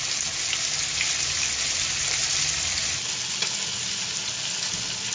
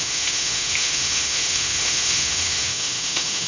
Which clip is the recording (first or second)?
first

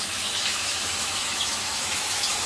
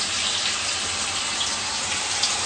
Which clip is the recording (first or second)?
second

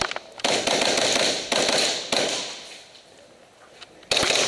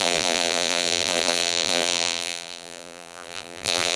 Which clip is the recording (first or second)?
first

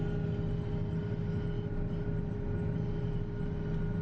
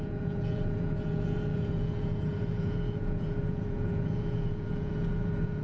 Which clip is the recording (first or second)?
first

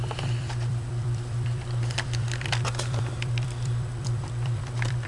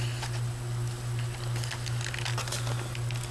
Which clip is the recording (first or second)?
second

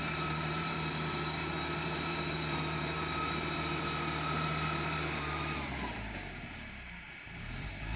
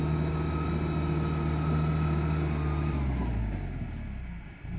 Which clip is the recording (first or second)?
second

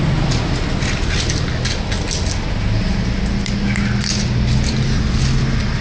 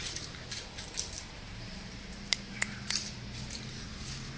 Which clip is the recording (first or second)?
first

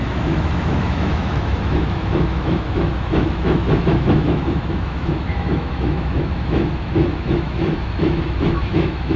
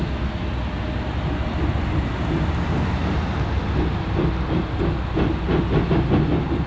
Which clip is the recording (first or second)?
second